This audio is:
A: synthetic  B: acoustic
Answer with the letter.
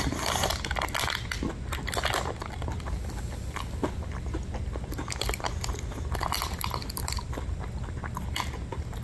B